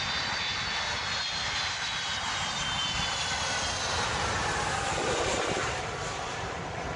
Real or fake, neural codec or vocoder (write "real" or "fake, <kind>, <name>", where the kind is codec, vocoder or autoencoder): real